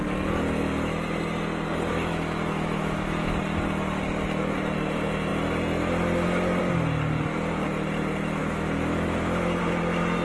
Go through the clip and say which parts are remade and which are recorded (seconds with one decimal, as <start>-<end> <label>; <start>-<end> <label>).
0.0-1.9 recorded; 1.9-3.4 remade; 3.4-8.4 recorded; 8.4-9.6 remade; 9.6-10.2 recorded